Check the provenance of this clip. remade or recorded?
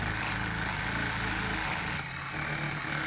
recorded